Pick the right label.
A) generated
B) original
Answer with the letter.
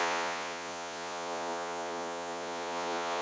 A